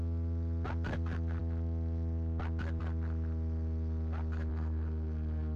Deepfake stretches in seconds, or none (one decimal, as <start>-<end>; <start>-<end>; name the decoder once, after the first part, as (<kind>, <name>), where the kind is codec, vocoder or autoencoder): 4.5-5.6 (codec, SNAC)